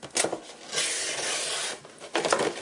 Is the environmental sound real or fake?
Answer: real